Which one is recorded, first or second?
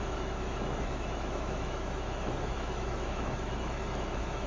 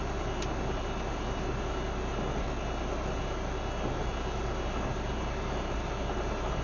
second